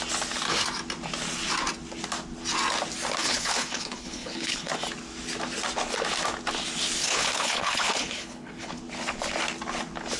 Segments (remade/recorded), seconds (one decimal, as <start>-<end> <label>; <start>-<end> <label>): 0.0-3.2 recorded; 3.2-4.7 remade; 4.7-7.0 recorded; 7.0-8.8 remade; 8.8-10.2 recorded